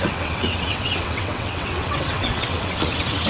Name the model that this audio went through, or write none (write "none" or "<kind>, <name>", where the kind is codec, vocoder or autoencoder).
vocoder, WaveNeXt